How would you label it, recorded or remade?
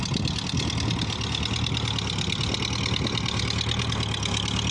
recorded